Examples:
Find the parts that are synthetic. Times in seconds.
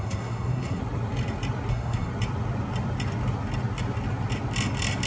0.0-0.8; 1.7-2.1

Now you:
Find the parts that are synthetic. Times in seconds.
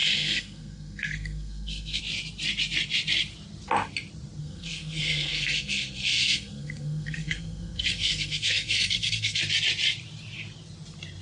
0.0-2.0; 4.4-9.4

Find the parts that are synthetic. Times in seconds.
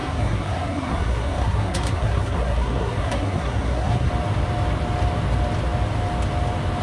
0.0-4.1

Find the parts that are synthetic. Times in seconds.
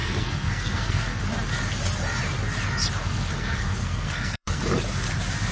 0.0-1.2; 3.0-4.6